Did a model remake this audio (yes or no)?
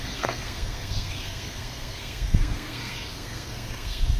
yes